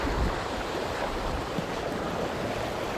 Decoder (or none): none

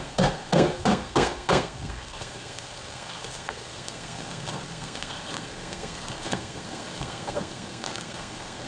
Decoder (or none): codec, SNAC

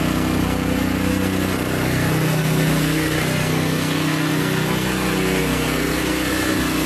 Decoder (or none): codec, SNAC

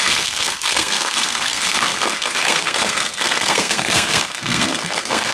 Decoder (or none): codec, SNAC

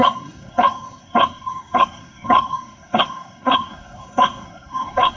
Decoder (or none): codec, SNAC